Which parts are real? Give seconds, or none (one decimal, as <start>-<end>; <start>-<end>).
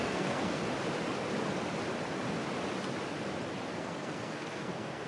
0.6-3.7